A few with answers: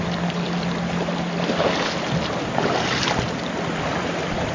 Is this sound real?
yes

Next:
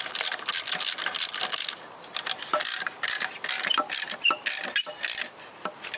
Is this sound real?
yes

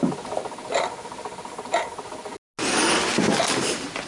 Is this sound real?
yes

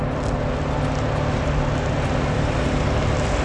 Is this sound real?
yes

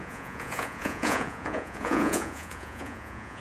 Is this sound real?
no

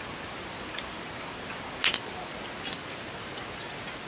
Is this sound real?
yes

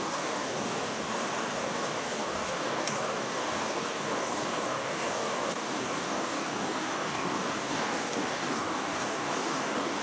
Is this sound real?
no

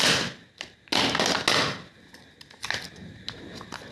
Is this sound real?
yes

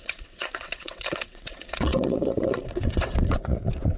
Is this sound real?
no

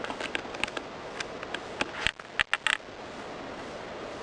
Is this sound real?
yes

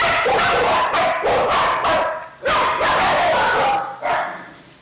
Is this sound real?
yes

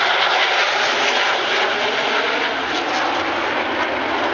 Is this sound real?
yes